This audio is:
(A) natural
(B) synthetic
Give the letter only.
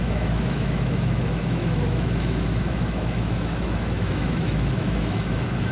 B